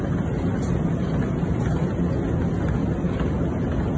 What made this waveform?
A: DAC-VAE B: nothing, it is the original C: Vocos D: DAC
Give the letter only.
B